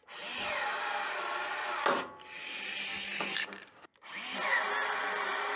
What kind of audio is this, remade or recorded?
recorded